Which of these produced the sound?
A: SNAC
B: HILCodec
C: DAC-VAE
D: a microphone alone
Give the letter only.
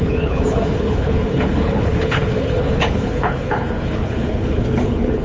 B